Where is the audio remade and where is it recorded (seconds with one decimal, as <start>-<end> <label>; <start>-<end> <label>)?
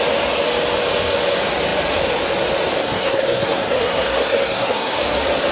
0.0-2.8 recorded; 2.8-5.0 remade; 5.0-5.5 recorded